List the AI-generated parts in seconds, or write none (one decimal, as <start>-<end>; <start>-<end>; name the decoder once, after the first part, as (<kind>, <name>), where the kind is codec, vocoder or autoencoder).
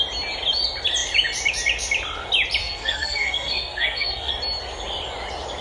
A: 2.6-4.3 (codec, SNAC)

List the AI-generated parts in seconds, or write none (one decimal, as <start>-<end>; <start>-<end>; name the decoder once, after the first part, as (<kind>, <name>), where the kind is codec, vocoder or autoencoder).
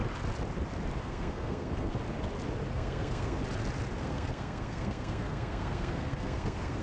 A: 1.0-1.9 (codec, SNAC); 2.7-3.4; 4.0-6.8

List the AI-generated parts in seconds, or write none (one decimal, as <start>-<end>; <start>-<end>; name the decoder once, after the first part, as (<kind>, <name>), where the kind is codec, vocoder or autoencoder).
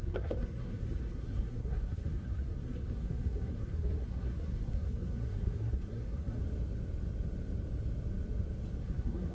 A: 0.0-6.4 (codec, SNAC); 8.8-9.3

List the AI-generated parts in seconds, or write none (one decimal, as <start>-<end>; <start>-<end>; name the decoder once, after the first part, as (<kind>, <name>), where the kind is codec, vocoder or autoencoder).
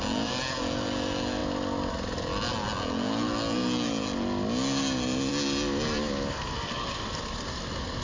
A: none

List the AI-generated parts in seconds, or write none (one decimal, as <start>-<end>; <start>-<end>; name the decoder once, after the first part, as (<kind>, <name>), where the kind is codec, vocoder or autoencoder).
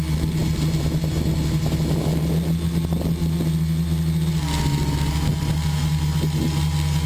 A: none